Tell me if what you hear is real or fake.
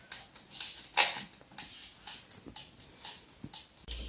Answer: real